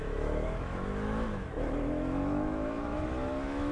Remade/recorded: remade